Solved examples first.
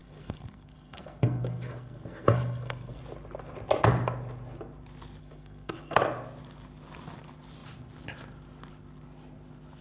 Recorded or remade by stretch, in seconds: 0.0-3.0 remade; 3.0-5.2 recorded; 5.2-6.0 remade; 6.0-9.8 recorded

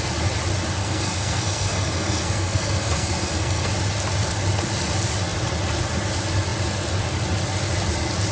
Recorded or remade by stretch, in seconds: 0.0-0.8 recorded; 0.8-3.7 remade; 3.7-8.3 recorded